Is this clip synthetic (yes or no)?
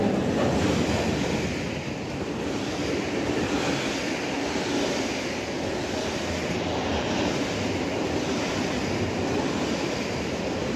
no